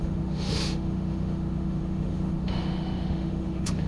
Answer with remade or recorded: remade